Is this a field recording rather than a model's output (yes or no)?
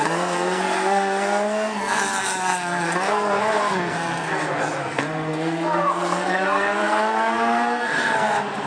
no